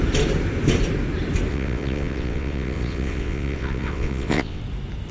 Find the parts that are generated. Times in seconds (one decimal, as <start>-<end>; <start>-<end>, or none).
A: 1.5-4.6